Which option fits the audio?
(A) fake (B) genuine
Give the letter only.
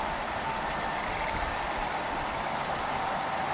B